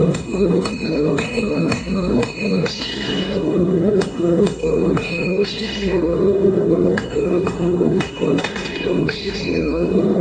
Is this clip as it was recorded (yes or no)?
no